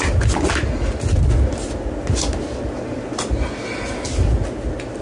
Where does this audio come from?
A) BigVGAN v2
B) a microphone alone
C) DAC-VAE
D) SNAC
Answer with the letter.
B